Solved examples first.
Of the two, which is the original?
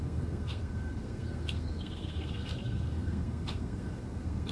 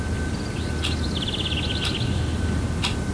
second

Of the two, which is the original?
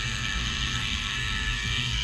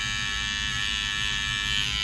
second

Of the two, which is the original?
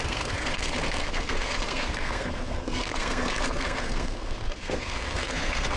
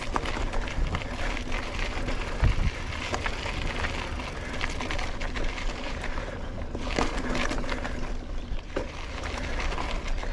second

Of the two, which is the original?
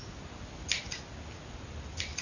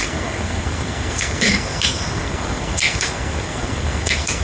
first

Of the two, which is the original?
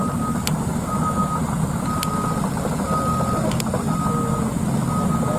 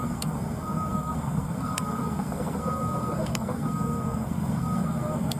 first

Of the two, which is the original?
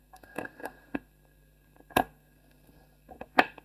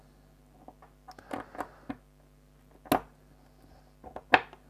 second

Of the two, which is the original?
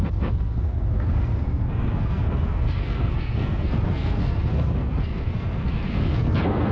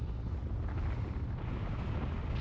second